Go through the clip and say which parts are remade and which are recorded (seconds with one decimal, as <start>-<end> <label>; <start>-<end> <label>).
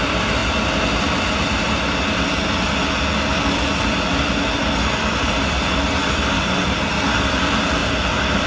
0.0-6.0 recorded; 6.0-7.0 remade; 7.0-7.8 recorded; 7.8-8.5 remade